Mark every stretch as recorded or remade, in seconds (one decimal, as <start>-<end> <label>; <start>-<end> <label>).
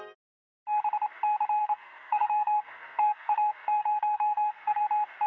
0.0-1.6 recorded; 1.6-4.8 remade; 4.8-5.3 recorded